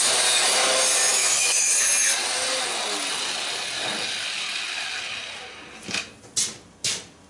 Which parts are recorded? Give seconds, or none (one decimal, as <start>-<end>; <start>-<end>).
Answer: 0.0-1.1; 1.7-7.3